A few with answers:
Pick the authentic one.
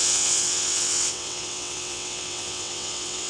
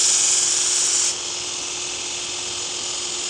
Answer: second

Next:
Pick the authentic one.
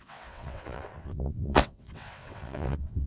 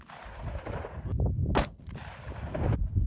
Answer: second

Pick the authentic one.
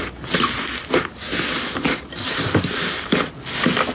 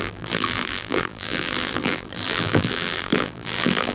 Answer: first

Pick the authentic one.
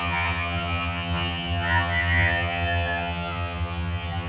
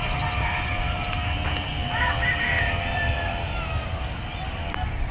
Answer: second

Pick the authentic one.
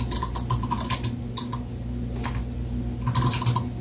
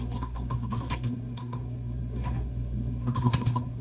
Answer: first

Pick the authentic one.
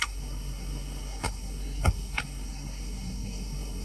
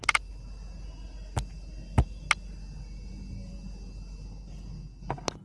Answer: second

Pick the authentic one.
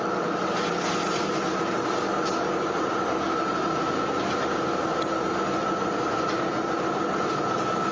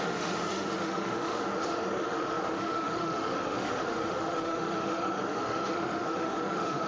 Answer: first